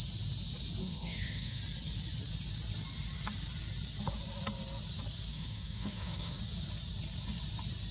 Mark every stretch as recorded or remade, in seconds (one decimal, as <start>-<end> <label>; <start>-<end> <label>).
0.0-0.8 recorded; 0.8-1.6 remade; 1.6-5.3 recorded; 5.3-6.4 remade; 6.4-7.9 recorded